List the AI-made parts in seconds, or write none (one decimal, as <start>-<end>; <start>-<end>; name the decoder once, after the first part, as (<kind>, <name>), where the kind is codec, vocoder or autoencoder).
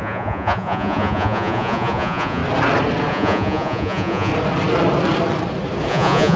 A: 0.0-2.4 (vocoder, Vocos); 3.1-4.3; 5.9-6.4